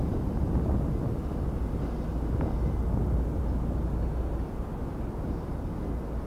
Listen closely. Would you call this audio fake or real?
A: real